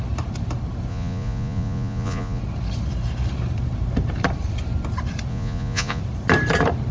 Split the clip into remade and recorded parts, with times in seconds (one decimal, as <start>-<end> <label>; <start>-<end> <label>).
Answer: 0.0-0.9 recorded; 0.9-2.4 remade; 2.4-5.3 recorded; 5.3-6.0 remade; 6.0-6.9 recorded